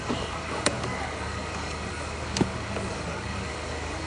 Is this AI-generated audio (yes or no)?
yes